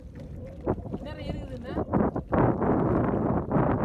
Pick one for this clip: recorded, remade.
recorded